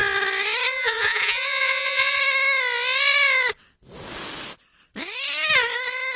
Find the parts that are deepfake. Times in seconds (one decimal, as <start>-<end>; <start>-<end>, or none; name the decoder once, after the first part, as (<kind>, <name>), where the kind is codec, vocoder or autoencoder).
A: 0.7-2.2 (vocoder, Vocos)